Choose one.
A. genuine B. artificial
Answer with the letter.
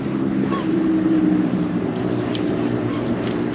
B